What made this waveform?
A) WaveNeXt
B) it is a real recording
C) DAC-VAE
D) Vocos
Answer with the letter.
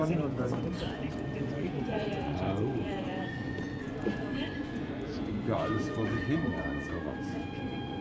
D